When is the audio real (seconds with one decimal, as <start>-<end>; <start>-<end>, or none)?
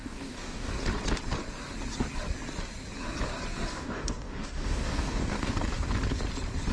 0.7-3.7; 5.5-6.7